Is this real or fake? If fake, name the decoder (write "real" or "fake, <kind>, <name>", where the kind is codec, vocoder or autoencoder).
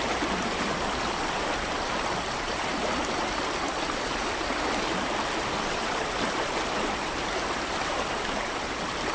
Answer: real